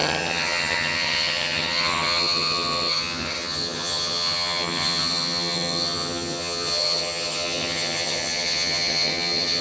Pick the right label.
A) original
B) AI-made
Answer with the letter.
B